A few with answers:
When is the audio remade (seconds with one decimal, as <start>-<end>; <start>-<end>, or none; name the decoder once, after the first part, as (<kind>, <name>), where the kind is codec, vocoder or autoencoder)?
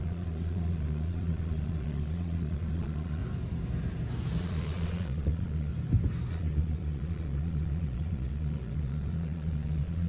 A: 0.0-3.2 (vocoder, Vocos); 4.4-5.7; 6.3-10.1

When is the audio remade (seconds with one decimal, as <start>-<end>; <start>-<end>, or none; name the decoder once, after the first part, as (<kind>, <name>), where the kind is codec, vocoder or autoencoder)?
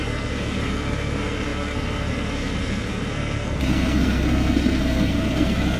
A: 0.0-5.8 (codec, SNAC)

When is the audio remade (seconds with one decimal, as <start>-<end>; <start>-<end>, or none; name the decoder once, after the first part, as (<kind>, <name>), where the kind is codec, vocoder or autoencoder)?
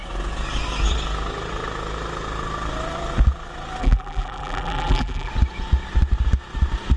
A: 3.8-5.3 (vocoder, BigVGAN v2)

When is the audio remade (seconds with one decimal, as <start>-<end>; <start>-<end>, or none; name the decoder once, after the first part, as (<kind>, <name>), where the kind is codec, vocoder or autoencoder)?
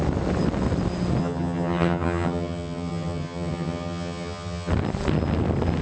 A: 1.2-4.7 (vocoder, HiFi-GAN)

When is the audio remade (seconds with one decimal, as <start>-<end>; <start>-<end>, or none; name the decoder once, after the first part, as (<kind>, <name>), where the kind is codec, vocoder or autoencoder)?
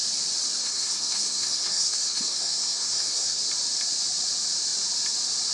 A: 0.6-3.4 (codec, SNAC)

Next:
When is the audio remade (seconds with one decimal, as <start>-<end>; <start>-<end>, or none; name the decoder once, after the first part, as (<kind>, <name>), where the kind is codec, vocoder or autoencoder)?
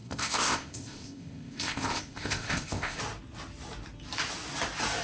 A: 0.0-3.0 (codec, ZipCodec)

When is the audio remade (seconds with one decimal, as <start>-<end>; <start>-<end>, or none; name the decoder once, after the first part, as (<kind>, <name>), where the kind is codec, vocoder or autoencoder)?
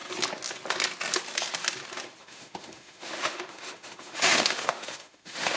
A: 2.2-5.6 (autoencoder, DAC-VAE)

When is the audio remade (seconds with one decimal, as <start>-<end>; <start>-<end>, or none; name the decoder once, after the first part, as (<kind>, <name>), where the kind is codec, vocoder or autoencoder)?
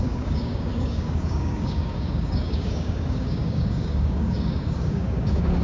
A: 0.0-5.6 (codec, DAC)